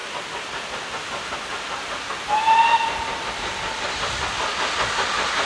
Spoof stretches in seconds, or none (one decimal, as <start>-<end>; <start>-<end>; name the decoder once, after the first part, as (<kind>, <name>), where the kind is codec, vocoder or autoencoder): none